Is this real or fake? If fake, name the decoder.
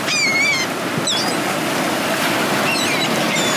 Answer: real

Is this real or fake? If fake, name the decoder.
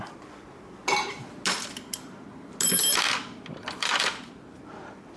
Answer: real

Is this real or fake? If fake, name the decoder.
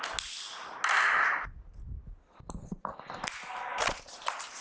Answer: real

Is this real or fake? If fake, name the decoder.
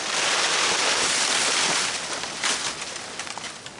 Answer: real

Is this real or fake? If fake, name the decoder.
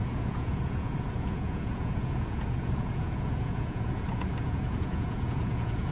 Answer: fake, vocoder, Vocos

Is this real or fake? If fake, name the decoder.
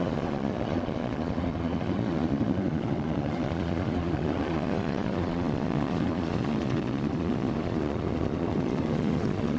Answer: fake, vocoder, Vocos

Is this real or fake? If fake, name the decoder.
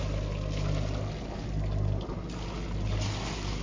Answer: real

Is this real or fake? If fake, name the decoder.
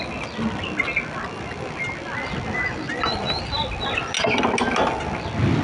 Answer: real